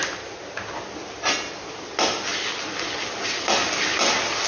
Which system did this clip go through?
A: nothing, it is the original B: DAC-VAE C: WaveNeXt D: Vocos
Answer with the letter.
A